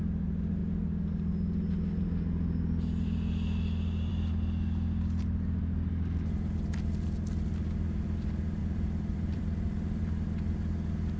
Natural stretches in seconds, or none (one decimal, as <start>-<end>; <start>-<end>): 0.0-8.6; 10.0-11.2